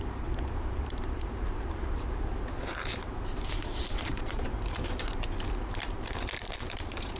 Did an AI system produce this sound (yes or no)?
yes